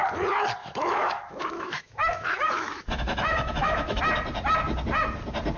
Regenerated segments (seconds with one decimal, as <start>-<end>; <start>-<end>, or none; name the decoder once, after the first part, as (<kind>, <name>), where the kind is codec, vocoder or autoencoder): 0.6-4.0 (autoencoder, DAC-VAE)